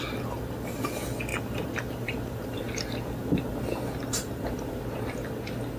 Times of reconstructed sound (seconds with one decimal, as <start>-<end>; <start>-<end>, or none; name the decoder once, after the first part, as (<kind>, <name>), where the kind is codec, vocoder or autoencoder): 1.3-4.8 (vocoder, BigVGAN v2)

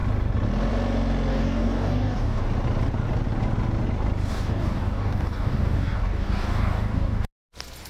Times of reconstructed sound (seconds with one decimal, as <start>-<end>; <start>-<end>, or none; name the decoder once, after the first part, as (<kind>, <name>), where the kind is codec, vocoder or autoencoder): 1.3-2.4 (codec, DAC); 4.3-7.3